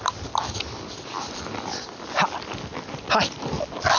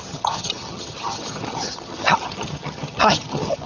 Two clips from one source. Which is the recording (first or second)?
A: first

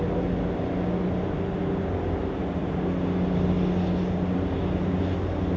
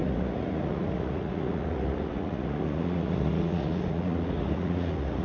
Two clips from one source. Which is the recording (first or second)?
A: first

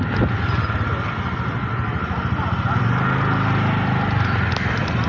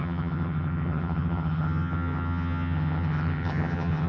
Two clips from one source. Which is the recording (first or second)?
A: first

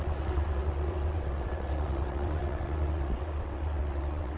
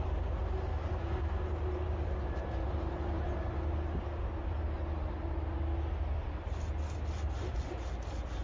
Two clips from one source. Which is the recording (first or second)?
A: second